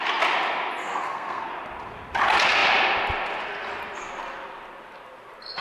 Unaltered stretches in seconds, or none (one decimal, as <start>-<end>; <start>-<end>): 0.0-0.8; 1.5-5.6